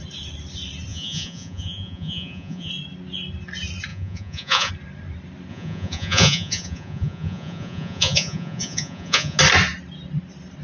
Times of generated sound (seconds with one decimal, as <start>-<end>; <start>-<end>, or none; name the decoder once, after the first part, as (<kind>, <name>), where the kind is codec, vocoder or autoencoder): 0.9-2.7 (vocoder, Vocos); 3.9-4.7; 5.5-9.4